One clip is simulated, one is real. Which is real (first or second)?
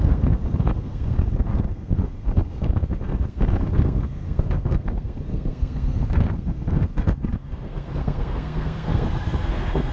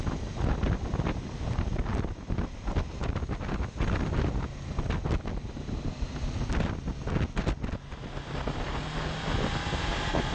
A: second